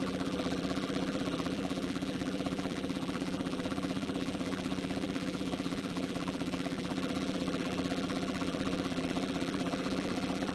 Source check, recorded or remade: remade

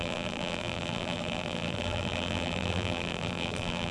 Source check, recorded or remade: remade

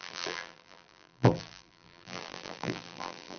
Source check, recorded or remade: remade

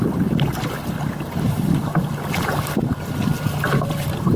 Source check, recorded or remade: recorded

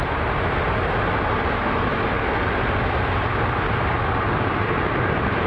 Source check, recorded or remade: recorded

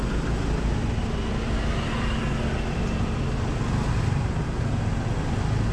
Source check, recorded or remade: recorded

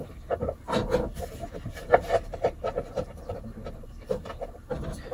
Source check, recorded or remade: remade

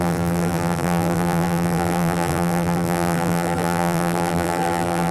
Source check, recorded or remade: remade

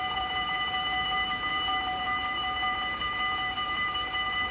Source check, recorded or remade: remade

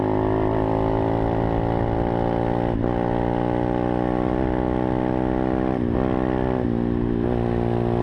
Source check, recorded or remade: recorded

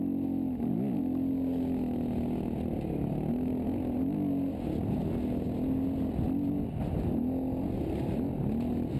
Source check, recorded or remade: recorded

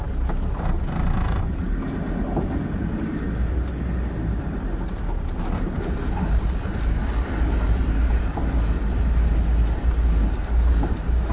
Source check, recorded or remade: recorded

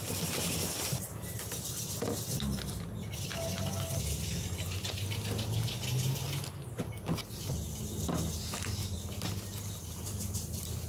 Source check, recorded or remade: recorded